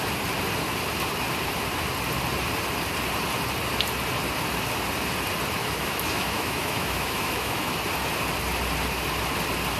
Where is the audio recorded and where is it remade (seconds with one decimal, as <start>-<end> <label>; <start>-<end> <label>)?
0.0-5.6 recorded; 5.6-7.7 remade; 7.7-9.8 recorded